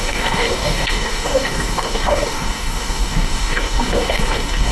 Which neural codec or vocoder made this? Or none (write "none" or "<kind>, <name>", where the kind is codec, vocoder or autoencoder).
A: codec, DAC